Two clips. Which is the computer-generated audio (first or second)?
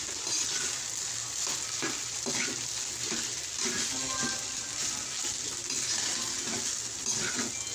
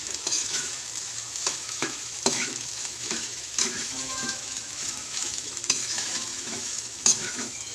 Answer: second